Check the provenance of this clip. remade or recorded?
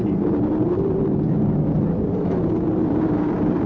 remade